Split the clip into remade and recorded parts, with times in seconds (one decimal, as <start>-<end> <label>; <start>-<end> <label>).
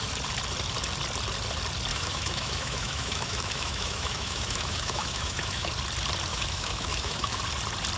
0.0-1.9 recorded; 1.9-5.7 remade; 5.7-6.3 recorded; 6.3-7.4 remade; 7.4-8.0 recorded